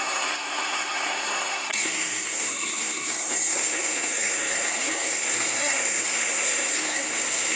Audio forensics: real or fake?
fake